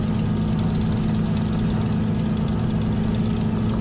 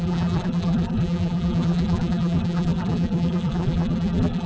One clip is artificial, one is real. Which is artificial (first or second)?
second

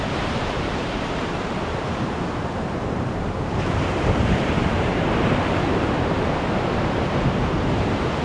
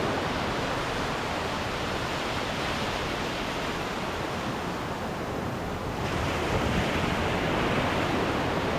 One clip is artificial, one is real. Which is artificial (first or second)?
first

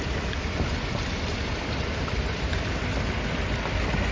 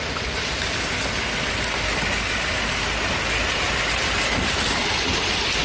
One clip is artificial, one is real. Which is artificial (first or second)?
first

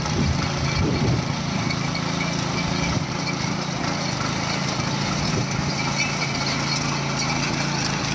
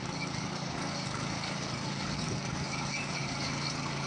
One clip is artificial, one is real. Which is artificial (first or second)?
second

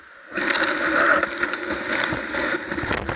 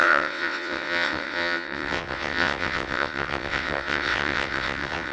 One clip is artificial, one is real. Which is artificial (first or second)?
second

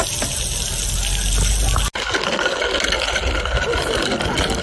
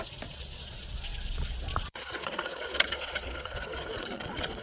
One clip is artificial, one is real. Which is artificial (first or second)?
second